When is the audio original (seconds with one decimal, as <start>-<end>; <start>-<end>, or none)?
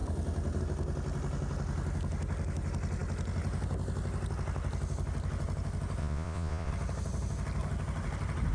0.0-6.0; 6.7-8.5